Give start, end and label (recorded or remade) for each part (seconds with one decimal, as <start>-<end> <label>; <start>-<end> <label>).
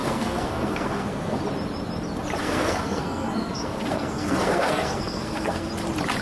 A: 0.0-1.4 remade; 1.4-2.4 recorded; 2.4-5.7 remade; 5.7-6.2 recorded